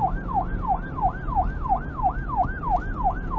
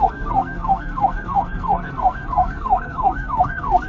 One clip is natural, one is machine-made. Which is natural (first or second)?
first